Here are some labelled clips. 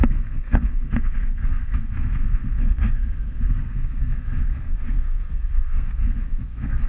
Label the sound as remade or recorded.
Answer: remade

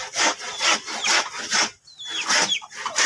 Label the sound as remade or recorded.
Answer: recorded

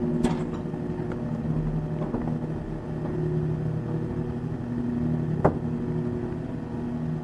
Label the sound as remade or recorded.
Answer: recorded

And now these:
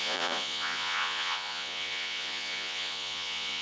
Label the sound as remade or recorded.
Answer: remade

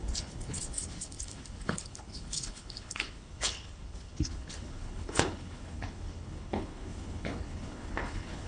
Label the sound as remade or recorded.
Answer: remade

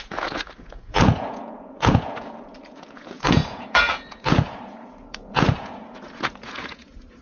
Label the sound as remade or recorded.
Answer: remade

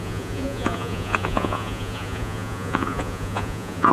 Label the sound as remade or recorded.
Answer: remade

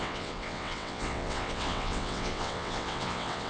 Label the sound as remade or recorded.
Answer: remade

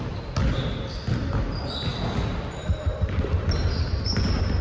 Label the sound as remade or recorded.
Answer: recorded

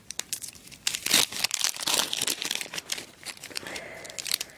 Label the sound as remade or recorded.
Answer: remade